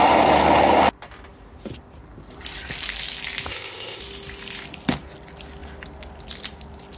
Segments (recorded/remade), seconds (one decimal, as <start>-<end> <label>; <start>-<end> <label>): 0.0-3.5 recorded; 3.5-4.0 remade; 4.0-7.0 recorded